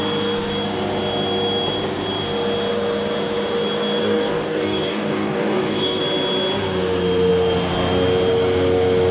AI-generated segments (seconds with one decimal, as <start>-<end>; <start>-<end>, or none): 4.0-6.0